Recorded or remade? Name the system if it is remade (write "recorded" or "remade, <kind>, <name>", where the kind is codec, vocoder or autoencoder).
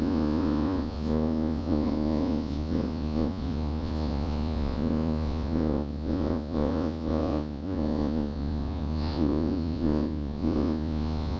remade, vocoder, Vocos